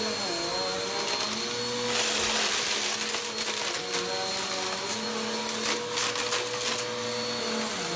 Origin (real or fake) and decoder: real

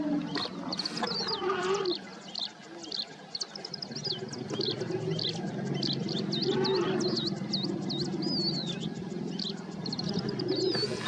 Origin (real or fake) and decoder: real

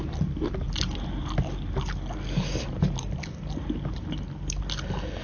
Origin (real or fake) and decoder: real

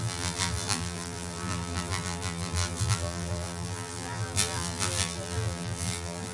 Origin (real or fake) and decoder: fake, vocoder, BigVGAN v2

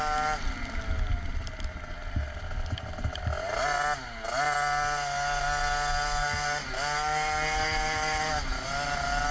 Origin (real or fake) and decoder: real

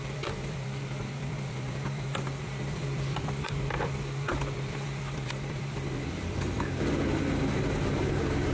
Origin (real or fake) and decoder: fake, vocoder, BigVGAN v2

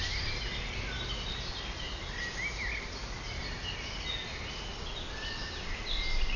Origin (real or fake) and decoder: real